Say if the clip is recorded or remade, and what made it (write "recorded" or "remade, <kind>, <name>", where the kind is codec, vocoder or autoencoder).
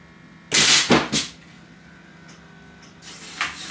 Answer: recorded